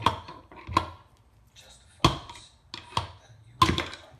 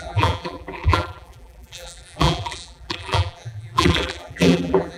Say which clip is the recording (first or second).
first